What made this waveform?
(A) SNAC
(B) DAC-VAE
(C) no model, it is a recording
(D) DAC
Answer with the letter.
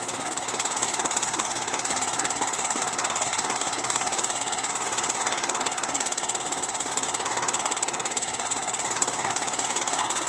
A